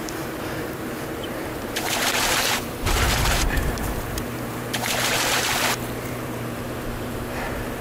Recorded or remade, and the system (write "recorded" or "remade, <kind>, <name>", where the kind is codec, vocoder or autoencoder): remade, vocoder, BigVGAN v2